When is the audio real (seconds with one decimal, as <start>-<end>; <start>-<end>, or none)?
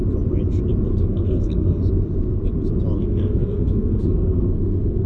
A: 0.0-0.9; 1.8-3.0